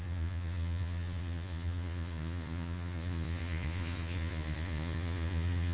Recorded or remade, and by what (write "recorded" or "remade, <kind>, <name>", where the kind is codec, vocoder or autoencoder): remade, vocoder, Vocos